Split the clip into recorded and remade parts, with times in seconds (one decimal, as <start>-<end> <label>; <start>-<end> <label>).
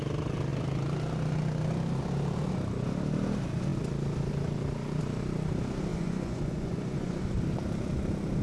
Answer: 0.0-5.9 recorded; 5.9-7.2 remade; 7.2-8.4 recorded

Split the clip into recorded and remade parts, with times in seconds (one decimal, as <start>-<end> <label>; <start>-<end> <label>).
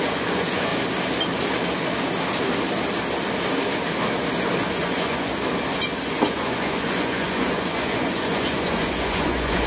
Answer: 0.0-0.7 remade; 0.7-4.7 recorded; 4.7-5.3 remade; 5.3-6.0 recorded; 6.0-9.7 remade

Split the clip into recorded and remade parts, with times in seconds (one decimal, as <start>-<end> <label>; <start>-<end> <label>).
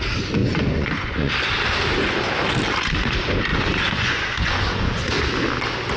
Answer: 0.0-0.4 recorded; 0.4-1.3 remade; 1.3-3.5 recorded; 3.5-5.1 remade; 5.1-6.0 recorded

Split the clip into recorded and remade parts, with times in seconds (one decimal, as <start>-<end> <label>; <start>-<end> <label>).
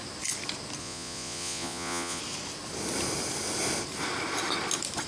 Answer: 0.0-0.8 recorded; 0.8-2.2 remade; 2.2-5.1 recorded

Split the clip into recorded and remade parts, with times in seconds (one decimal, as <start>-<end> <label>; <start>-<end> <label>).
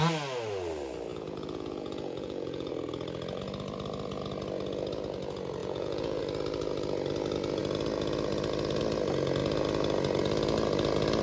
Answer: 0.0-1.1 recorded; 1.1-2.7 remade; 2.7-5.6 recorded; 5.6-6.2 remade; 6.2-11.2 recorded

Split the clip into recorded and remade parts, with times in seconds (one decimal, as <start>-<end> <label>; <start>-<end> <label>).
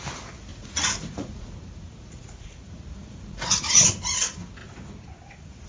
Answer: 0.0-0.5 recorded; 0.5-3.9 remade; 3.9-4.6 recorded; 4.6-5.7 remade